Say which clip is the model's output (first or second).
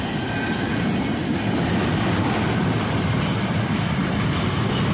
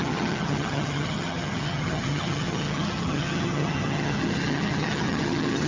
second